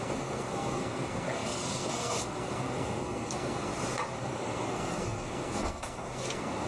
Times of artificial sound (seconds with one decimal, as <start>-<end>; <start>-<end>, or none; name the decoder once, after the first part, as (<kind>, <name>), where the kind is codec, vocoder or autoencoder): 0.0-3.7 (codec, SNAC); 4.2-6.7